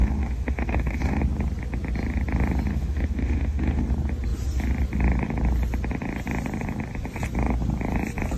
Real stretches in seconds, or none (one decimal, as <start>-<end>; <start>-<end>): 1.2-2.7; 3.9-8.4